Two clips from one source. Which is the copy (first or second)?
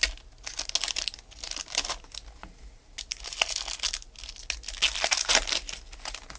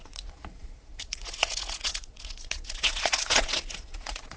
second